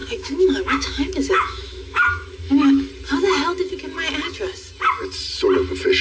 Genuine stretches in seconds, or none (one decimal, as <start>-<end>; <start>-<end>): 2.9-6.0

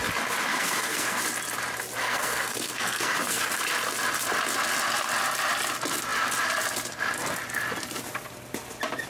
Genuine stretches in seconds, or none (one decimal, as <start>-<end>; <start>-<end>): 0.0-0.5; 1.2-2.0; 3.6-9.1

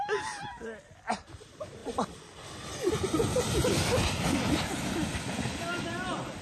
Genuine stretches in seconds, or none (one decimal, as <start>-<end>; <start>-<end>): 0.0-6.4

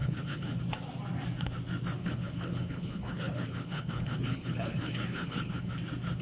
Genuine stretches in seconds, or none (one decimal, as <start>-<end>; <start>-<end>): 0.6-2.0; 5.7-6.2

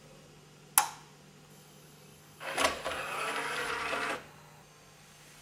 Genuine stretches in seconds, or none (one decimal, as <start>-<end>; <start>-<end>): 0.0-1.5; 3.7-5.4